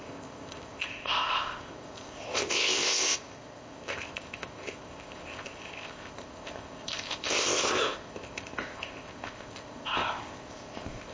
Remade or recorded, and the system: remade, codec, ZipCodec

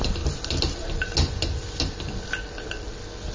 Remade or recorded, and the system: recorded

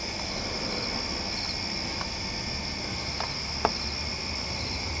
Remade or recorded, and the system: recorded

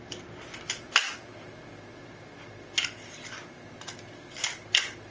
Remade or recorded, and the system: recorded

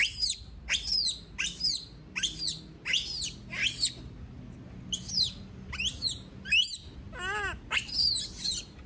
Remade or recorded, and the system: recorded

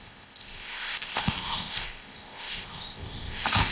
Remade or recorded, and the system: remade, codec, ZipCodec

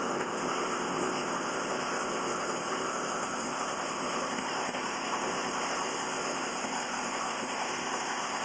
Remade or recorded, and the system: remade, codec, ZipCodec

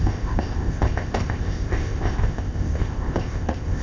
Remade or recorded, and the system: remade, codec, ZipCodec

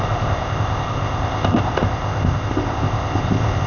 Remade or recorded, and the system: remade, codec, ZipCodec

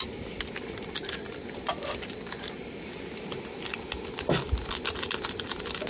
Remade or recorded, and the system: recorded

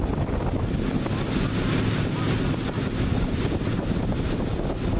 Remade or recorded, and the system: recorded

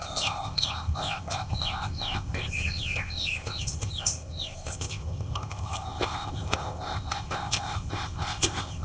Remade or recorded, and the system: remade, codec, ZipCodec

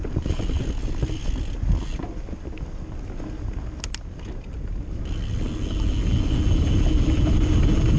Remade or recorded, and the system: recorded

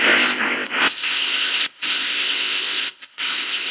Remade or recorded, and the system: remade, codec, ZipCodec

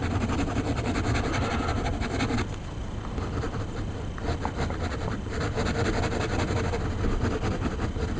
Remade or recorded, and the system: recorded